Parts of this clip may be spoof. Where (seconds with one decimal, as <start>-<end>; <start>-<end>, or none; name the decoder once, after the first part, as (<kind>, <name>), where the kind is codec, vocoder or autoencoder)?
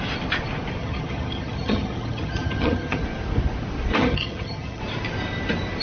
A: 0.8-3.0 (vocoder, HiFi-GAN); 4.0-4.8